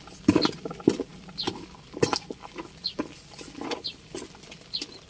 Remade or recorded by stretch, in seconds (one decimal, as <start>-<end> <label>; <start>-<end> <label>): 0.0-5.1 recorded